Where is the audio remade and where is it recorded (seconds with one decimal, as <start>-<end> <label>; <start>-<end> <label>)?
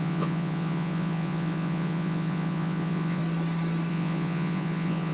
0.0-3.2 remade; 3.2-3.9 recorded; 3.9-5.1 remade